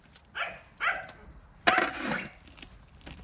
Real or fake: real